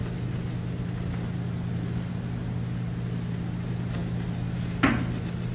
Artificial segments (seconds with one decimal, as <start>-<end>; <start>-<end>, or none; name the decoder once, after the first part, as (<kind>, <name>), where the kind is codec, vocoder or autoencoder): none